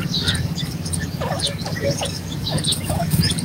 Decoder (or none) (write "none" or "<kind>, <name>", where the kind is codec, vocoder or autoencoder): codec, DAC